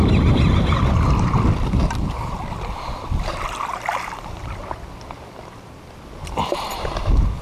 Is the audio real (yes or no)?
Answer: yes